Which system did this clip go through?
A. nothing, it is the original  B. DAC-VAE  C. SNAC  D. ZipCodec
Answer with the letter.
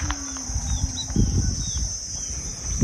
A